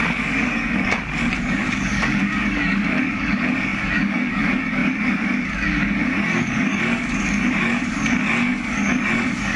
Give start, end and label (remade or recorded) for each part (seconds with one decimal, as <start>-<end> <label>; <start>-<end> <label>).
0.0-9.6 remade

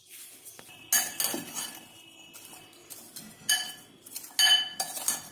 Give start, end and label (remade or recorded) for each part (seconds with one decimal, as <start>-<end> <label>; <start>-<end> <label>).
0.0-5.3 recorded

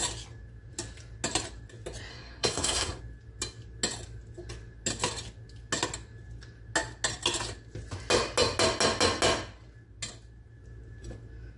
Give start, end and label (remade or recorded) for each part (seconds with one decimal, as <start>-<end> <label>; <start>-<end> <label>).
0.0-2.1 recorded; 2.1-3.0 remade; 3.0-11.6 recorded

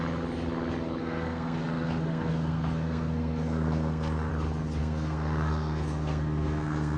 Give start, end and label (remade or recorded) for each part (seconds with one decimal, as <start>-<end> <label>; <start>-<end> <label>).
0.0-1.0 recorded; 1.0-4.3 remade; 4.3-4.8 recorded; 4.8-7.0 remade